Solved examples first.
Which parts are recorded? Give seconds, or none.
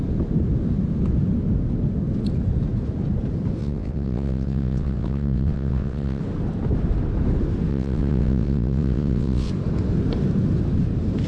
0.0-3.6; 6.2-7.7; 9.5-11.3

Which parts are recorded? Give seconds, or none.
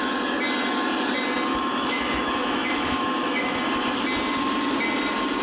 0.0-1.5; 3.6-5.4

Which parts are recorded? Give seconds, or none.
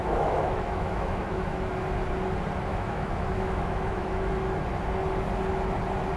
1.7-2.7; 4.3-6.2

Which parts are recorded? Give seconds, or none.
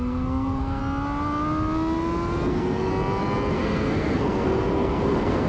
0.8-2.5; 2.9-3.5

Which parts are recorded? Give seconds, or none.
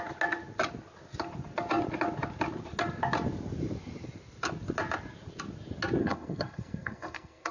0.0-6.0